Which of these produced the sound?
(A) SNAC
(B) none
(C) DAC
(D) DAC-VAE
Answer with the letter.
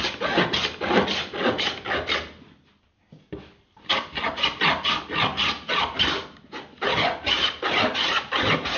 B